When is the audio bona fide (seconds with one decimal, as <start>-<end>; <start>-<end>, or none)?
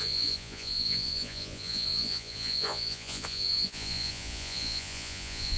none